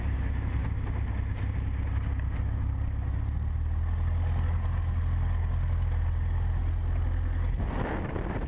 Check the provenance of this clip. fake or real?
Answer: real